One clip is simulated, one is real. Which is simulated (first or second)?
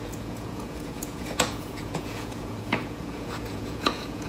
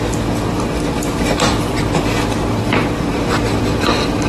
first